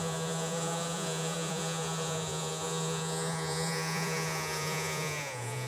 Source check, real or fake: fake